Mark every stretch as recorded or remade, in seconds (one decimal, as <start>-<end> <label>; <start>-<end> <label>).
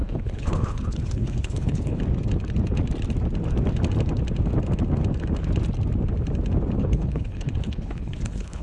0.0-2.0 remade; 2.0-6.8 recorded; 6.8-8.6 remade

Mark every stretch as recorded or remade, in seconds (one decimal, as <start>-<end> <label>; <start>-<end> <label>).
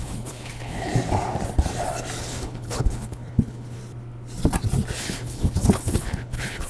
0.0-0.9 remade; 0.9-2.2 recorded; 2.2-3.8 remade; 3.8-5.0 recorded; 5.0-6.7 remade